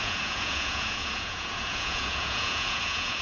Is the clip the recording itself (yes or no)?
no